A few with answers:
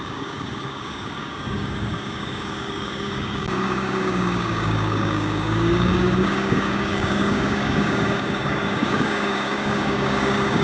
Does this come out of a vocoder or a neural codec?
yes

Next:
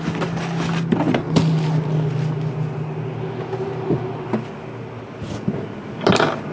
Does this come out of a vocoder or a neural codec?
no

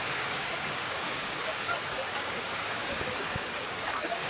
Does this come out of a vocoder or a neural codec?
yes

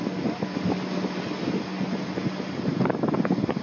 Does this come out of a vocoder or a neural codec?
no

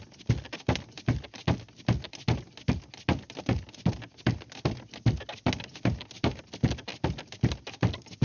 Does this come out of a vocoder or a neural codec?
no